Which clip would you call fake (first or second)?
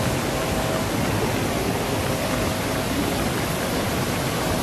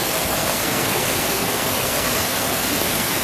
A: second